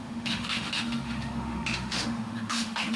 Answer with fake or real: fake